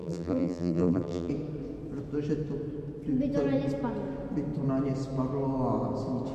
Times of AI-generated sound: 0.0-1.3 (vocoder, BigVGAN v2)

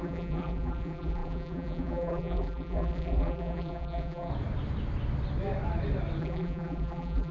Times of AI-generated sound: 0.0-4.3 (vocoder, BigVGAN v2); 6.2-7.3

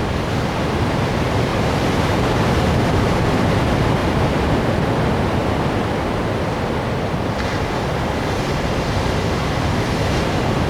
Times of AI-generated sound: 1.5-2.8 (vocoder, BigVGAN v2); 4.0-4.6